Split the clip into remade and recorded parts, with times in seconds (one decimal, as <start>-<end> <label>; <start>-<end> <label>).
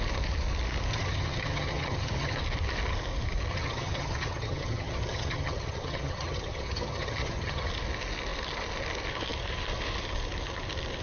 0.0-0.9 recorded; 0.9-2.4 remade; 2.4-3.5 recorded; 3.5-7.7 remade; 7.7-11.0 recorded